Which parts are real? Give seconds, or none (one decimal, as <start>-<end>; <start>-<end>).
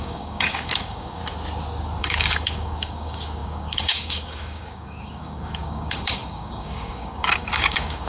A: 1.2-2.0